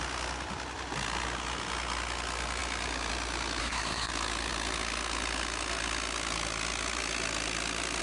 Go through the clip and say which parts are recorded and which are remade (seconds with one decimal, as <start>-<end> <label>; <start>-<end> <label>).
0.0-3.6 recorded; 3.6-4.1 remade; 4.1-8.0 recorded